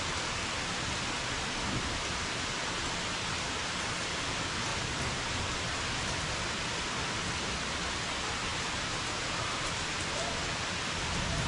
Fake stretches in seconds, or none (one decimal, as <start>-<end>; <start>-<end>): none